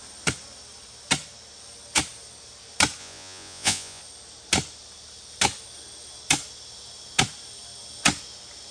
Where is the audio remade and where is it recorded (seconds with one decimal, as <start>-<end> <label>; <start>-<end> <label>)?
0.0-3.0 recorded; 3.0-4.0 remade; 4.0-8.7 recorded